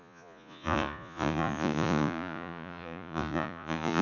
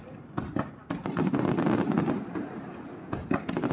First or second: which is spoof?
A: first